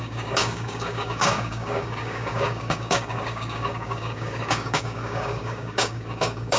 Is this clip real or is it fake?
fake